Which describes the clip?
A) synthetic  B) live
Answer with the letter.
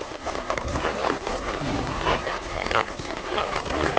A